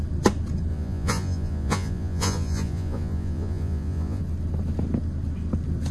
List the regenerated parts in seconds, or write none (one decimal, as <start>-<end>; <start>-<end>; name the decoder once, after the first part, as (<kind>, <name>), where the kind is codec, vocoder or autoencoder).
0.7-4.2 (vocoder, Vocos)